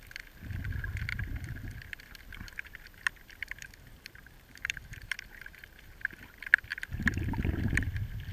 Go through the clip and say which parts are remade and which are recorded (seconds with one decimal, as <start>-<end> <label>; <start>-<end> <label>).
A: 0.0-3.4 recorded; 3.4-6.2 remade; 6.2-8.3 recorded